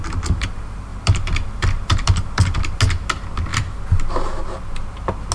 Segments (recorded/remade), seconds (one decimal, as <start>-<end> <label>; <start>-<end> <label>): 0.0-0.9 recorded; 0.9-2.8 remade; 2.8-5.3 recorded